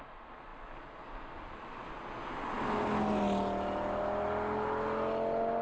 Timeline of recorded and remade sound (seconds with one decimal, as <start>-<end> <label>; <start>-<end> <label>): 0.0-5.6 recorded